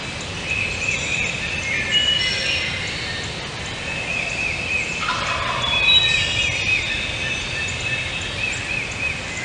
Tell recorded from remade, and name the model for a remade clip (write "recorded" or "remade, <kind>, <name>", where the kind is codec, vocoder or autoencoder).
recorded